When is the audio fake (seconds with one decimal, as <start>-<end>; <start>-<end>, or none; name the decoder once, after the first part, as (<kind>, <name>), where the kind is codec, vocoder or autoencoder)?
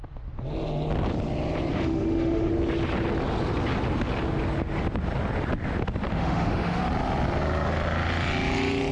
1.7-2.5 (autoencoder, DAC-VAE); 6.1-6.8